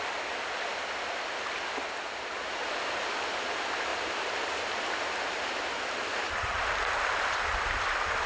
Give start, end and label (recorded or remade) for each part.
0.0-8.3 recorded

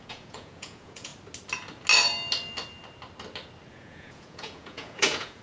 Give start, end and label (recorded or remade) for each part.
0.0-1.1 remade; 1.1-3.7 recorded; 3.7-5.4 remade

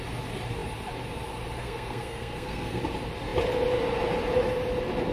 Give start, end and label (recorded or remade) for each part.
0.0-1.6 recorded; 1.6-2.8 remade; 2.8-5.1 recorded